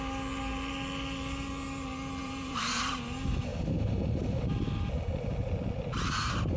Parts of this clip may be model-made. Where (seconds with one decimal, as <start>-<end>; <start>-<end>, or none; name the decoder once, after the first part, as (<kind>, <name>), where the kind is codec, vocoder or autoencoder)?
2.2-3.0 (vocoder, BigVGAN v2); 3.5-4.5